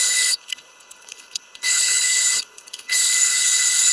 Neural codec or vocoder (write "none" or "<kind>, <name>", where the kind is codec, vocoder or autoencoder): codec, HILCodec